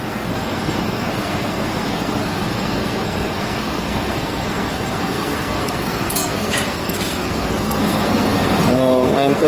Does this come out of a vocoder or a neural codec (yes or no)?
yes